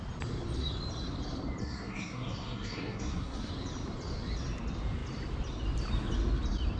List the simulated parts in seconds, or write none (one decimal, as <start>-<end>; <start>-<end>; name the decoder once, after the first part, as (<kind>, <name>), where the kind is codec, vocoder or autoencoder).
1.6-3.5 (codec, SNAC)